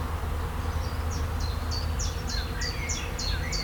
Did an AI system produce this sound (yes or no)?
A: no